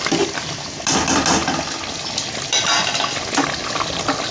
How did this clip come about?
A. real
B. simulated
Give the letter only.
A